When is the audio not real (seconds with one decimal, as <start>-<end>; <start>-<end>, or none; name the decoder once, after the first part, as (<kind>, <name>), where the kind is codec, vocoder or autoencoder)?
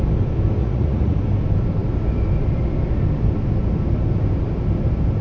0.6-1.2 (vocoder, Vocos)